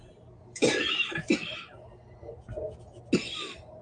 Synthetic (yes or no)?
no